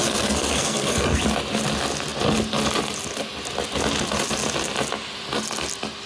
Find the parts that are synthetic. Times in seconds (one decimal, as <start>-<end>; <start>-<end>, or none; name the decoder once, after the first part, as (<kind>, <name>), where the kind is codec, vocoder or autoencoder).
0.0-1.2 (codec, SNAC)